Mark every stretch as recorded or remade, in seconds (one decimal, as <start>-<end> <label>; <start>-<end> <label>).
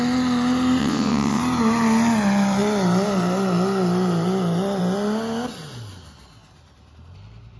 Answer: 0.0-0.8 recorded; 0.8-1.4 remade; 1.4-7.6 recorded